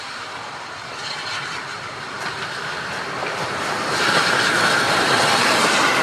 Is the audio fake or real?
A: fake